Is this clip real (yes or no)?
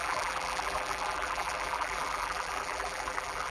no